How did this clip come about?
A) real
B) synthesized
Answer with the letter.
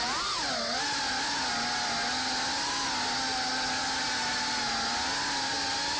A